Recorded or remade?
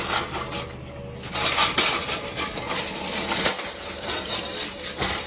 recorded